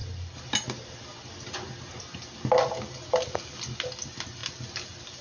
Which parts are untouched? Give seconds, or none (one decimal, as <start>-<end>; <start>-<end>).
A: 0.0-5.2